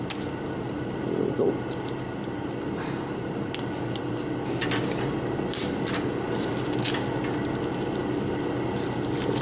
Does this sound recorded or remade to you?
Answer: recorded